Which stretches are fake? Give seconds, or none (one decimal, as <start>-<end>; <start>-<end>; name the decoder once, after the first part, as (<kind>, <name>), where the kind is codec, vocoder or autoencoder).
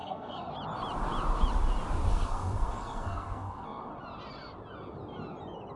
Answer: 0.0-0.5 (codec, SNAC); 2.1-3.9